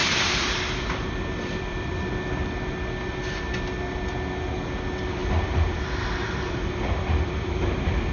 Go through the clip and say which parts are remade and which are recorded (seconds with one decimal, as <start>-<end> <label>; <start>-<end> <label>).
0.0-2.1 remade; 2.1-5.2 recorded; 5.2-8.1 remade